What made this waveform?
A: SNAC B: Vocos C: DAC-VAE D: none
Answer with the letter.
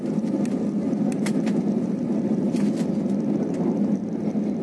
D